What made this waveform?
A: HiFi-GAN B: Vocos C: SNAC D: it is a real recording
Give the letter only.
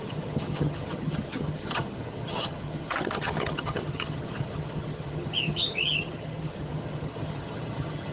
A